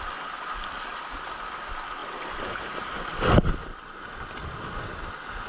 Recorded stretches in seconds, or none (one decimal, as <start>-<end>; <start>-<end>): 0.0-5.5